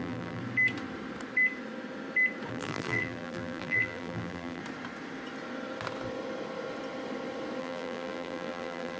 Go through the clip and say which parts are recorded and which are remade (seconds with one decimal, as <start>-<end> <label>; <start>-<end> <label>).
0.0-0.4 remade; 0.4-2.5 recorded; 2.5-4.6 remade; 4.6-7.6 recorded; 7.6-9.0 remade